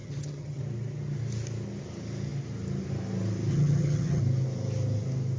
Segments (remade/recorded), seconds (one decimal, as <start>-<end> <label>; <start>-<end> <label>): 0.0-0.6 remade; 0.6-3.5 recorded; 3.5-4.2 remade; 4.2-5.4 recorded